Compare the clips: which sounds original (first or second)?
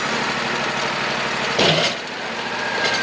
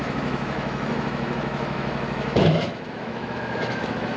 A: first